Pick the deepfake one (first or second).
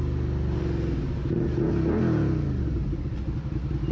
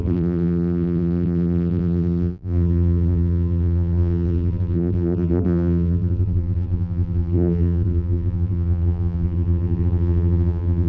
second